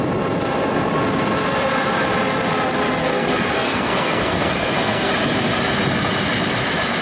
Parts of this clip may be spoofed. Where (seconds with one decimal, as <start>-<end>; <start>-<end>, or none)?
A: 3.0-5.1